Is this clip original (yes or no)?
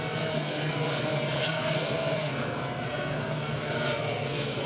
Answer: no